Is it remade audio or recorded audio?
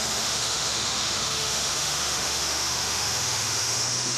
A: remade